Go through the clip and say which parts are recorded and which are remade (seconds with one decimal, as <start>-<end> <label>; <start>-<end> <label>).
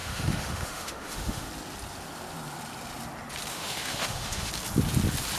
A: 0.0-1.5 remade; 1.5-3.5 recorded; 3.5-4.5 remade; 4.5-5.4 recorded